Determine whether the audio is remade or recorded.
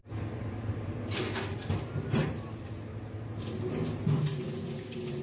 recorded